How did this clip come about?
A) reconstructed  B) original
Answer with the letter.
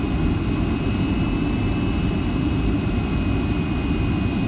B